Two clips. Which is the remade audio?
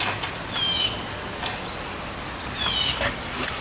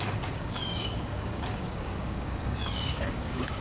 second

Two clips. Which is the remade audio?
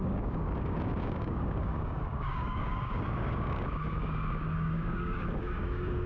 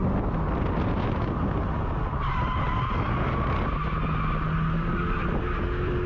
first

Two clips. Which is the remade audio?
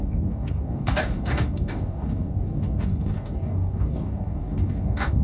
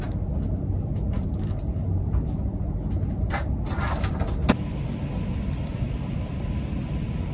first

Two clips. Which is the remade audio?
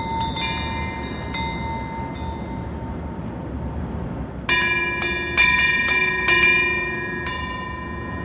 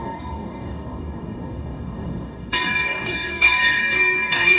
second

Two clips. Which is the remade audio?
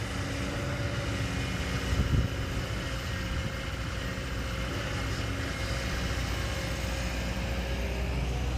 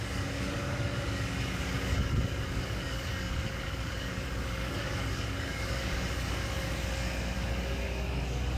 second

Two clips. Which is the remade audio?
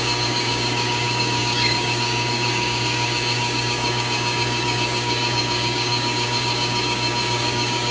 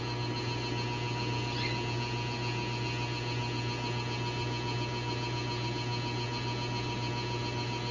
first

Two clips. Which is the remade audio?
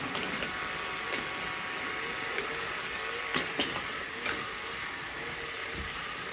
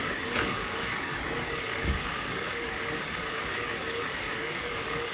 second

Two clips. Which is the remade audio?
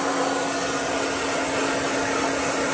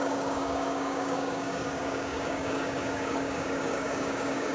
second